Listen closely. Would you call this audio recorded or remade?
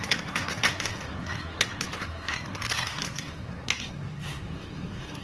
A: remade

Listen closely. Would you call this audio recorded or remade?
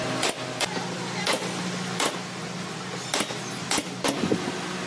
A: recorded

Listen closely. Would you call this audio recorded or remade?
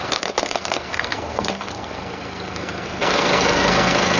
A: remade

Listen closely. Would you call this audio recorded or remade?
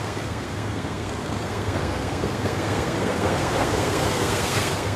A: remade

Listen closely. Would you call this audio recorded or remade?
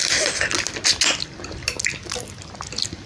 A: recorded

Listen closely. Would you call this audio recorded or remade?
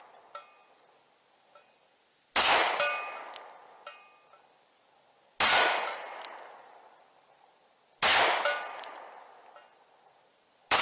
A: recorded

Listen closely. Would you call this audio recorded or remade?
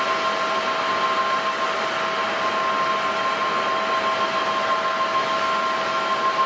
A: recorded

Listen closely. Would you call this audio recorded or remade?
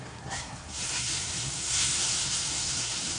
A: remade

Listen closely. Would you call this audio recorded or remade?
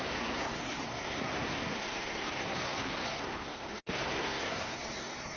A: remade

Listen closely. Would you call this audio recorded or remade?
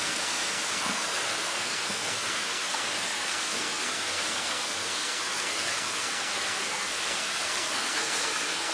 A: remade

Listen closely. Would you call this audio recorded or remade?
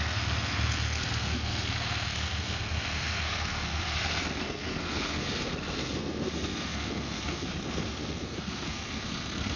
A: remade